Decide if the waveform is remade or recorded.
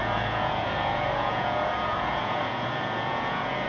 remade